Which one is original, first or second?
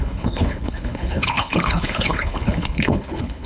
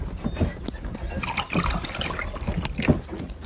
second